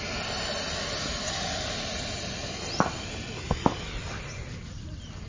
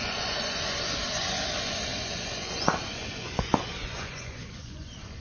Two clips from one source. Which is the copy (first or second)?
second